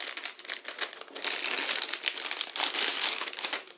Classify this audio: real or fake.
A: real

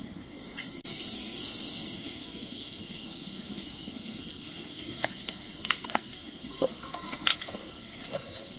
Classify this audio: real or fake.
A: fake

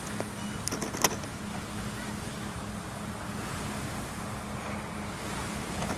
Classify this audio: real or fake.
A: real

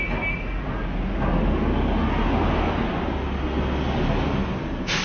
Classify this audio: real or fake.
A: real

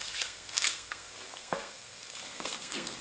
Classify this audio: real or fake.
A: fake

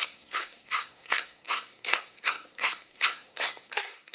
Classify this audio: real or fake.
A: fake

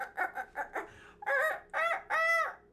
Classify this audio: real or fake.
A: real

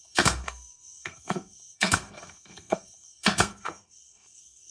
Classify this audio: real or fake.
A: fake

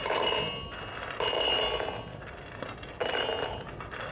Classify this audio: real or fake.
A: real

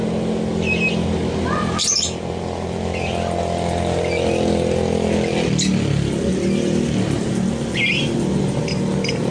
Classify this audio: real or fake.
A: real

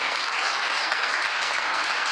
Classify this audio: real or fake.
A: fake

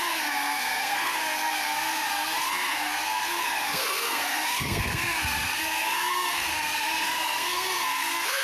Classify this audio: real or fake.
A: fake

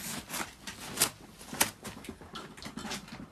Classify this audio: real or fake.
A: real